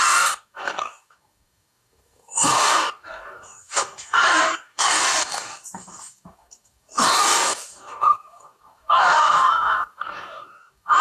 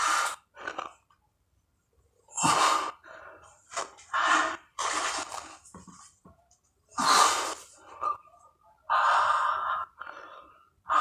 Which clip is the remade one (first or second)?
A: first